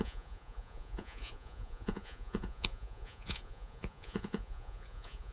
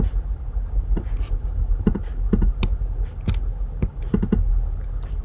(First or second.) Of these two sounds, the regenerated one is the first